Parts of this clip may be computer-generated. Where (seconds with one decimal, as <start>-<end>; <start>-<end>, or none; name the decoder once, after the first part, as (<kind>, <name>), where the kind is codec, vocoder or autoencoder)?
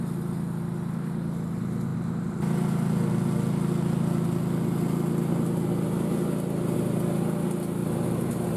7.8-8.6 (vocoder, BigVGAN v2)